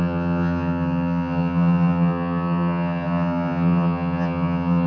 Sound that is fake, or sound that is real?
fake